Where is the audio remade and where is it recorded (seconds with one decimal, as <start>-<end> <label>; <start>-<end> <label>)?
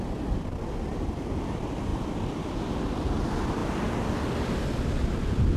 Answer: 0.0-1.9 recorded; 1.9-2.5 remade; 2.5-5.6 recorded